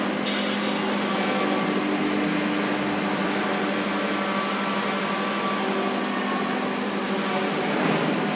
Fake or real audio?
real